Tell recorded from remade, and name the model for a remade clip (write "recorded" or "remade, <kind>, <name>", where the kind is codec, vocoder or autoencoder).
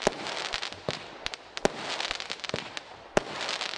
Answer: recorded